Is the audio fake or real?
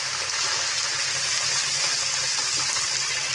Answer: real